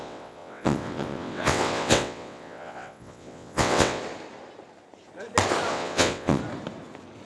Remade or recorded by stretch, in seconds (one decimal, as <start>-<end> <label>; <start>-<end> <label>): 0.0-4.0 remade; 4.0-5.7 recorded; 5.7-6.4 remade; 6.4-7.3 recorded